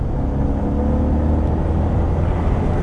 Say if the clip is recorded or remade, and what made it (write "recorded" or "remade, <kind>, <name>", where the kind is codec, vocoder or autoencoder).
recorded